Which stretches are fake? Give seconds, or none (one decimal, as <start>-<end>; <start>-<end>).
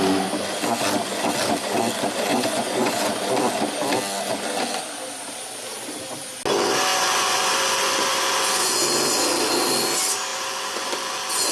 2.3-3.1; 6.9-9.1; 10.3-11.5